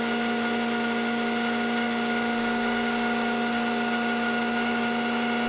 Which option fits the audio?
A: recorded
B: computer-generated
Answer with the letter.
A